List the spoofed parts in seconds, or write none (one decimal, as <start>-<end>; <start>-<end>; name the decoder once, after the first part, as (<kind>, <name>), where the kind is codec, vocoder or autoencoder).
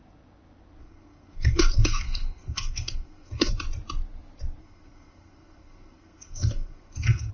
0.8-3.5 (codec, SNAC); 4.6-7.3